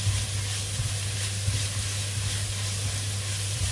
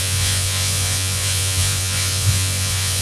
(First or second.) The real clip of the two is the first